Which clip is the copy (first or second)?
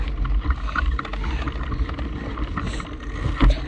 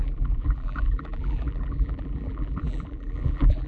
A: second